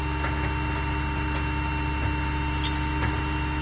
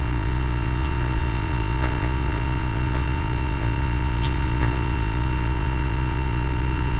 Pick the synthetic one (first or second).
second